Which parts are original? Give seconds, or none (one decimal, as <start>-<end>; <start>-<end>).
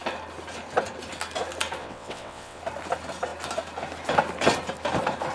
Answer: 0.0-1.8; 2.6-5.3